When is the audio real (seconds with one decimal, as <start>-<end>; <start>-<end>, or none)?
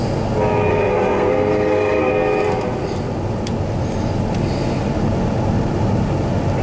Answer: 0.0-0.7; 2.1-6.6